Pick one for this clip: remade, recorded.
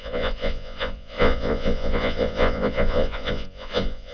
remade